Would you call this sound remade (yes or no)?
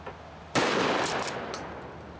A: no